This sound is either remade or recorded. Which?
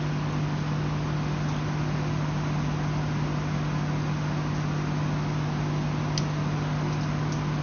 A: recorded